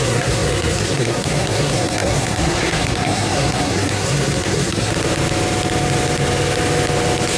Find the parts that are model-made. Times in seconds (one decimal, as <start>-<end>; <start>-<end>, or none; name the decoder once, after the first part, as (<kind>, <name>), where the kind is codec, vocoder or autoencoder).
0.0-4.9 (codec, SNAC)

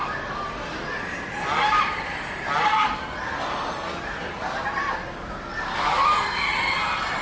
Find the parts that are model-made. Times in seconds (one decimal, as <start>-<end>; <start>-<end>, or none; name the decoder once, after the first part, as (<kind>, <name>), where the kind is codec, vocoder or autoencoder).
none

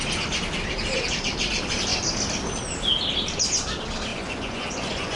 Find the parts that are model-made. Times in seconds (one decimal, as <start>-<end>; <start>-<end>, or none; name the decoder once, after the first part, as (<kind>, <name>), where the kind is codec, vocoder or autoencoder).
4.1-5.2 (vocoder, Vocos)